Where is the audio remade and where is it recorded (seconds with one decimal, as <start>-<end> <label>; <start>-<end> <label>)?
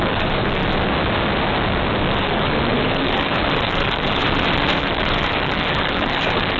0.0-0.6 remade; 0.6-2.0 recorded; 2.0-4.2 remade; 4.2-4.8 recorded; 4.8-6.6 remade